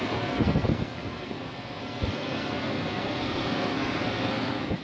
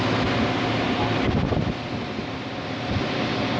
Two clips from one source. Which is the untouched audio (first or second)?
second